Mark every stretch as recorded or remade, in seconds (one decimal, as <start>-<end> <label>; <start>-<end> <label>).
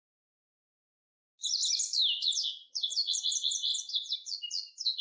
0.0-5.0 recorded